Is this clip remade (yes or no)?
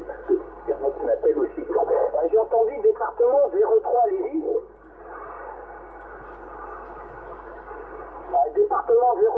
no